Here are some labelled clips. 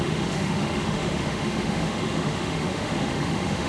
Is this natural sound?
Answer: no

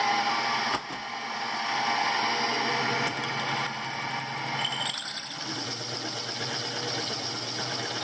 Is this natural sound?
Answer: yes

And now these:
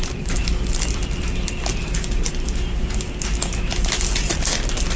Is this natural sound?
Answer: yes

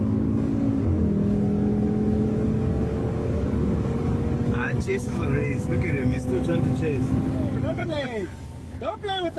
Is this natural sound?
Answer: no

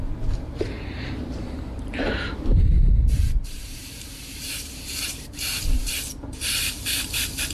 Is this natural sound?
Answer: no